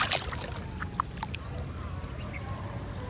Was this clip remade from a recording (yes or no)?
no